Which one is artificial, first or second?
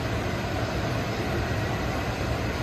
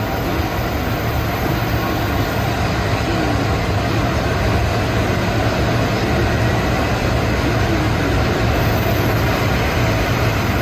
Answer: first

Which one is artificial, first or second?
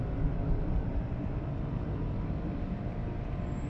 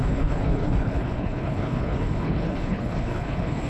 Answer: second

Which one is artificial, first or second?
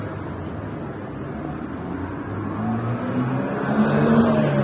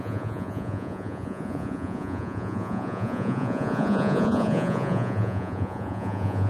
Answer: second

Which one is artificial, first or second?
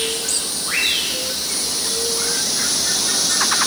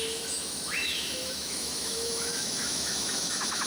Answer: second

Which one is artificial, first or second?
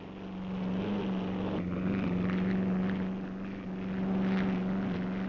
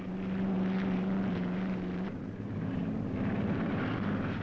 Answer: second